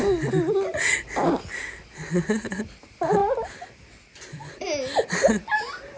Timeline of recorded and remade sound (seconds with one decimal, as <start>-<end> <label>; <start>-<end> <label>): 0.0-6.0 recorded

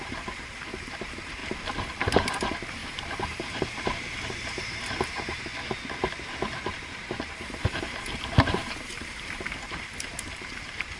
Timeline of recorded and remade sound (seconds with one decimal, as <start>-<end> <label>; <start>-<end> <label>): 0.0-1.4 remade; 1.4-2.0 recorded; 2.0-5.5 remade; 5.5-6.2 recorded; 6.2-11.0 remade

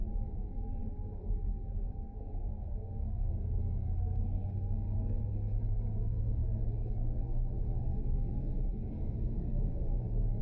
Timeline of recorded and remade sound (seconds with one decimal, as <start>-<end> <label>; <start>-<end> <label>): 0.0-10.4 remade

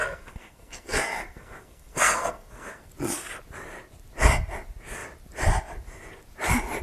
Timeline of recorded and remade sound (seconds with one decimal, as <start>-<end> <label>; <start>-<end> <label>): 0.0-2.9 remade; 2.9-6.8 recorded

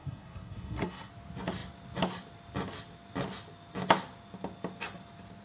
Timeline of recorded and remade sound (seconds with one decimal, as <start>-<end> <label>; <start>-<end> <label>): 0.0-1.1 remade; 1.1-5.4 recorded